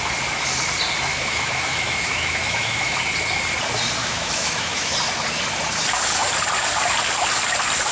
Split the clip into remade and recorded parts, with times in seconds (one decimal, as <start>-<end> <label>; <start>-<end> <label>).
0.0-1.1 recorded; 1.1-3.0 remade; 3.0-4.0 recorded; 4.0-4.9 remade; 4.9-7.9 recorded